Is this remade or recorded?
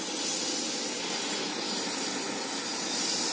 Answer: recorded